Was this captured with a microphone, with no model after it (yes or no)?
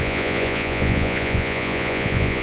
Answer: no